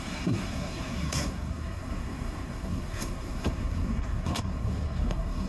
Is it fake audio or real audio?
fake